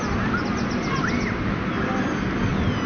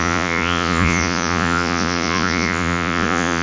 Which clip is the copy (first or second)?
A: second